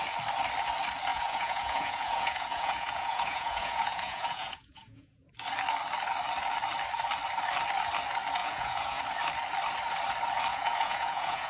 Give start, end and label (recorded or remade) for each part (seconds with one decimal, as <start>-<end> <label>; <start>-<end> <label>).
0.0-1.1 recorded; 1.1-5.3 remade; 5.3-8.4 recorded; 8.4-9.0 remade; 9.0-10.5 recorded; 10.5-11.5 remade